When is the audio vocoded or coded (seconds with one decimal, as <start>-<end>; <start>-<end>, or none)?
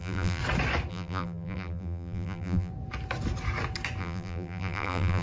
0.0-0.4; 0.9-2.7; 4.0-5.2